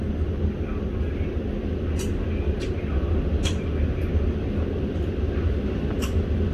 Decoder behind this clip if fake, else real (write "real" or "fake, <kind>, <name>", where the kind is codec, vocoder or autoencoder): real